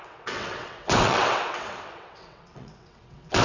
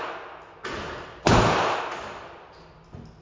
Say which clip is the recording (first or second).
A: second